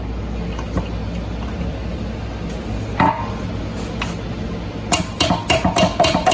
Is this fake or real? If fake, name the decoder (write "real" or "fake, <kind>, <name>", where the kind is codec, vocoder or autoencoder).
real